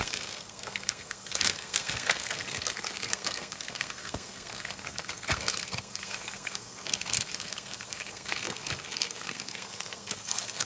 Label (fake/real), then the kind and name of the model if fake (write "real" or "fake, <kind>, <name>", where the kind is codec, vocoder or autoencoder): fake, codec, SNAC